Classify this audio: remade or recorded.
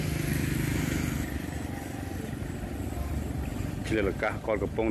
recorded